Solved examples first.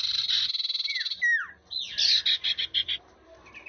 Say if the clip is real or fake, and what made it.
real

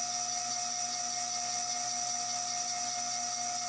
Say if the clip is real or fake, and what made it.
real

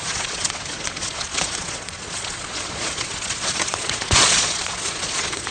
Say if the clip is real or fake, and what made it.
fake, vocoder, Vocos